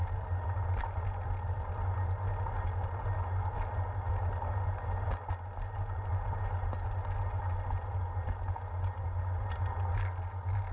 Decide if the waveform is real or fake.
real